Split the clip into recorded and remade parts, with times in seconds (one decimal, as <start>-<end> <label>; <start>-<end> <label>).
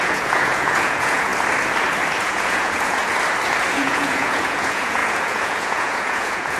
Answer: 0.0-1.3 remade; 1.3-2.2 recorded; 2.2-3.0 remade; 3.0-3.7 recorded; 3.7-6.6 remade